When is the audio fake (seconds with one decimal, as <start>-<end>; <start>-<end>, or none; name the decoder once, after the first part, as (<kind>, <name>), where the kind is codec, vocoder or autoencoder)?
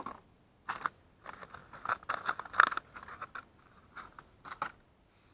none